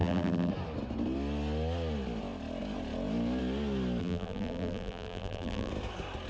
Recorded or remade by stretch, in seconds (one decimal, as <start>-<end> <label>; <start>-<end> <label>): 0.0-0.5 remade; 0.5-4.0 recorded; 4.0-5.7 remade; 5.7-6.3 recorded